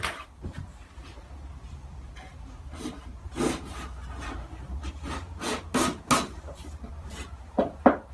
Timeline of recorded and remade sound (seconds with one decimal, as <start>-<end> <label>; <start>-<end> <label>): 0.0-8.1 remade